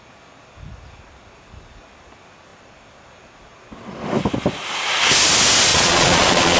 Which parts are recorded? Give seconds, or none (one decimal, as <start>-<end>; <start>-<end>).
0.0-5.7